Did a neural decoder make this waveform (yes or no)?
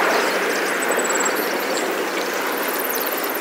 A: no